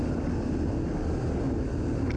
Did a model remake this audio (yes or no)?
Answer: no